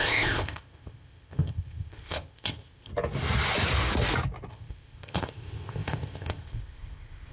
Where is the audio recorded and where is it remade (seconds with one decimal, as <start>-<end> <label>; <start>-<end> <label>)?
0.0-2.9 remade; 2.9-4.5 recorded; 4.5-7.3 remade

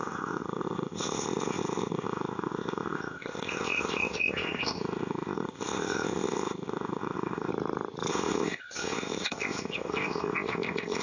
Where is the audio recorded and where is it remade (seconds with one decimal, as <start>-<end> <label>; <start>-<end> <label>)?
0.0-7.5 remade; 7.5-8.1 recorded; 8.1-11.0 remade

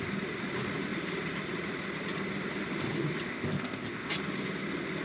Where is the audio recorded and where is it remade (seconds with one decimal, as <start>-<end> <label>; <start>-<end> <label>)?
0.0-3.3 recorded; 3.3-4.1 remade; 4.1-5.0 recorded

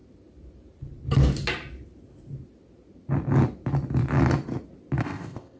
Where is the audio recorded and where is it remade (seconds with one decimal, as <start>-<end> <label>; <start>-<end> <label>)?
0.0-5.0 recorded; 5.0-5.6 remade

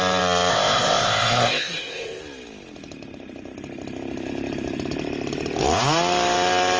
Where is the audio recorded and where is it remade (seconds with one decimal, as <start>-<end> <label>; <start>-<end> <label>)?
0.0-0.5 recorded; 0.5-2.2 remade; 2.2-6.8 recorded

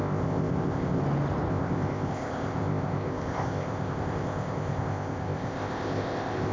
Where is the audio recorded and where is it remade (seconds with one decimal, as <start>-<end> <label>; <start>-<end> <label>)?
0.0-1.0 remade; 1.0-1.5 recorded; 1.5-6.5 remade

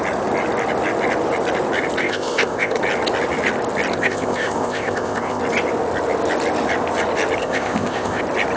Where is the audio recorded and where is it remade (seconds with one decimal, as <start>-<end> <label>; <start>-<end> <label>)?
0.0-2.0 recorded; 2.0-2.8 remade; 2.8-3.9 recorded; 3.9-5.4 remade; 5.4-7.4 recorded; 7.4-8.2 remade; 8.2-8.6 recorded

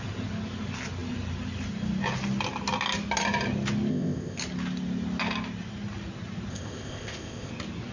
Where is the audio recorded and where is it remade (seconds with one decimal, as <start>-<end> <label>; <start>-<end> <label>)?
0.0-3.9 recorded; 3.9-4.4 remade; 4.4-6.5 recorded; 6.5-7.5 remade; 7.5-7.9 recorded